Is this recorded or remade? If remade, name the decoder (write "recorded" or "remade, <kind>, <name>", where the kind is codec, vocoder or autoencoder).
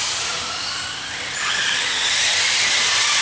recorded